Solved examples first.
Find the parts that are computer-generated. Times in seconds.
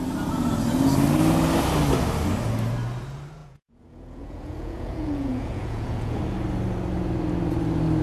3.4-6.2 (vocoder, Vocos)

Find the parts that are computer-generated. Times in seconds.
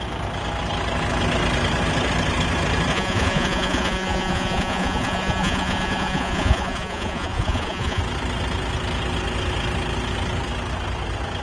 2.9-8.0 (vocoder, Vocos)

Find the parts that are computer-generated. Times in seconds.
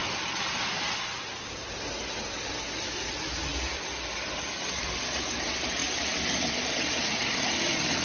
none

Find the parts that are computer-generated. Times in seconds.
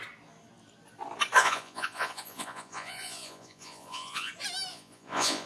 1.4-4.3 (vocoder, Vocos); 4.7-5.5